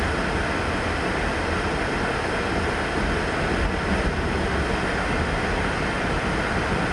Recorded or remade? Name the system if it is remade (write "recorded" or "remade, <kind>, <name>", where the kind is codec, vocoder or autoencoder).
recorded